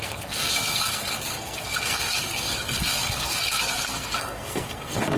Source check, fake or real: fake